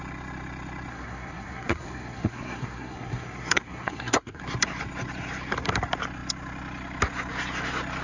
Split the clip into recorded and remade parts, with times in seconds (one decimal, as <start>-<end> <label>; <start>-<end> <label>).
0.0-0.9 recorded; 0.9-4.4 remade; 4.4-8.0 recorded